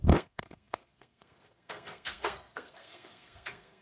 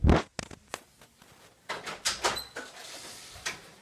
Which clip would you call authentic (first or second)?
second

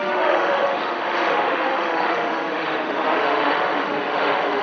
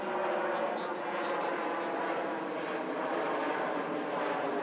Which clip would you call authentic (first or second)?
second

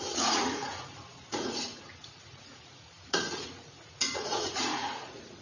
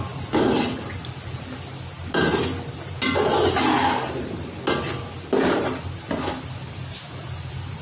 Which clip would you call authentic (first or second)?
second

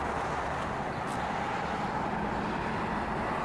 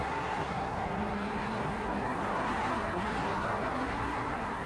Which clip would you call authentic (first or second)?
first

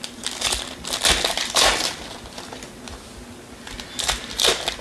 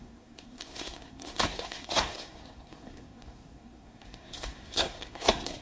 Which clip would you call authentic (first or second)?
first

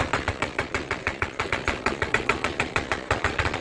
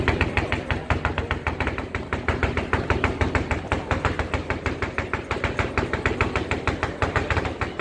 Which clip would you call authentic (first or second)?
second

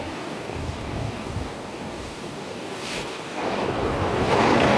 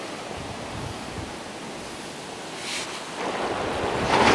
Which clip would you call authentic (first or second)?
second